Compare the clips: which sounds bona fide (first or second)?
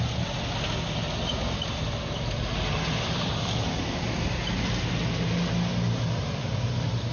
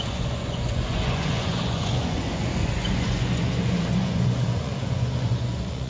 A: first